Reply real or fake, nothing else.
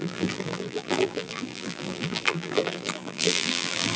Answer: fake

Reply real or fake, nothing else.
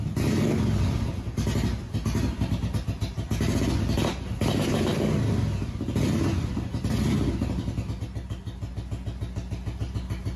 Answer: real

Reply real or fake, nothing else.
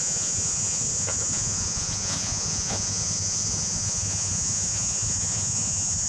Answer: fake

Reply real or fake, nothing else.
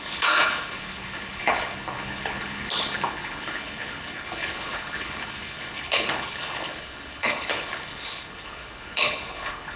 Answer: fake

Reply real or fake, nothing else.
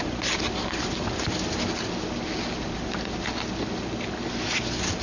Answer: real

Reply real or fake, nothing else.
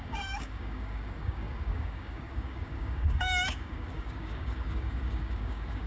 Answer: fake